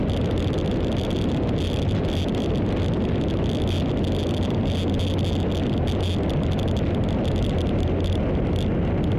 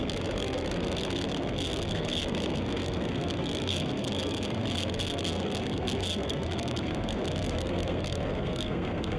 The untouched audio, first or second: first